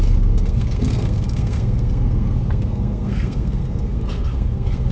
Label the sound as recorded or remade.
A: remade